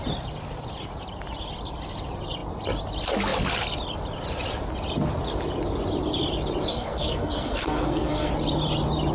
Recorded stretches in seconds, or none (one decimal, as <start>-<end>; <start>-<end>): 0.0-6.7; 8.3-9.1